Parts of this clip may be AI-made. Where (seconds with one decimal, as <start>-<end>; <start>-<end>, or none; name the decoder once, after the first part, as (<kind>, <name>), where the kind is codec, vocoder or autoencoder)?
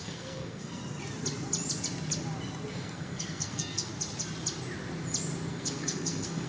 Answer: 0.0-0.8 (codec, SNAC); 2.7-3.9; 5.5-6.5